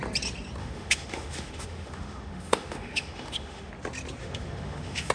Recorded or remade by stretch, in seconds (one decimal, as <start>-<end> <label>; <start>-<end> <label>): 0.0-0.6 recorded; 0.6-3.7 remade; 3.7-4.2 recorded; 4.2-5.1 remade